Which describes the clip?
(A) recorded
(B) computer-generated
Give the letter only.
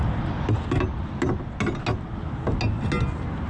A